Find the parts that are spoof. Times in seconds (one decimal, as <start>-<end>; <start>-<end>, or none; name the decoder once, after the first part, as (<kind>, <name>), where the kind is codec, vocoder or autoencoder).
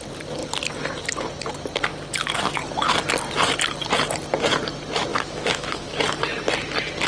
5.1-6.0 (autoencoder, DAC-VAE)